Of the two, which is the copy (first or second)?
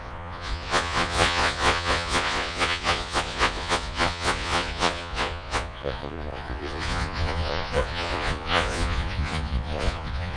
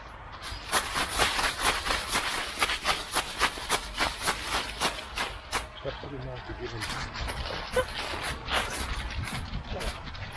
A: first